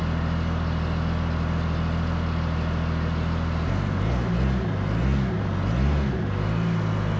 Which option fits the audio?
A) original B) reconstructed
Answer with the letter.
A